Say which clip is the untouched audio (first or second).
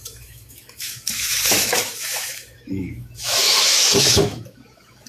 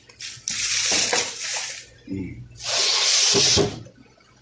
second